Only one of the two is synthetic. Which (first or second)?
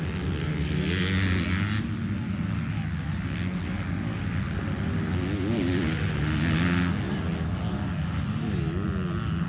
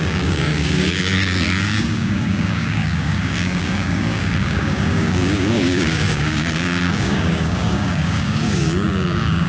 second